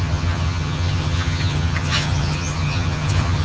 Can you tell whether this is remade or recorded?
remade